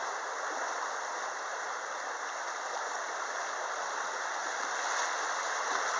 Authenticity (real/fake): real